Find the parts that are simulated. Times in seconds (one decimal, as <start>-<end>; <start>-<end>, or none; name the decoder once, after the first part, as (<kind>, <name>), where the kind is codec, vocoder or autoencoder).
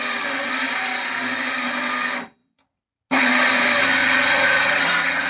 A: 4.0-5.3 (vocoder, Vocos)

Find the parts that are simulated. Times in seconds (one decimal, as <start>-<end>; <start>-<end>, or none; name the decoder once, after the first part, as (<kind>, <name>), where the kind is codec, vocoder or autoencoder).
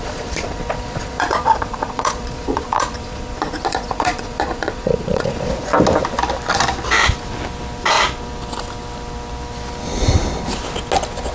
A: 0.0-5.7 (vocoder, Vocos)